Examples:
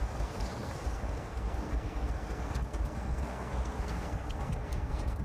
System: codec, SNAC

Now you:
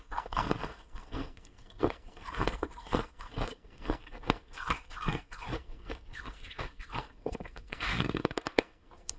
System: codec, SNAC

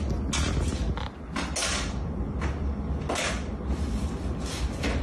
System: none